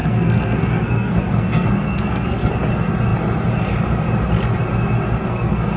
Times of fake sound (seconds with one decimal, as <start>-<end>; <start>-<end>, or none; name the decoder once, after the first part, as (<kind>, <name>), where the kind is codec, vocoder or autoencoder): 0.0-2.5 (codec, SNAC); 5.2-5.8